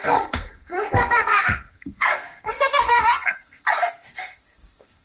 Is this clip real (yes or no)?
no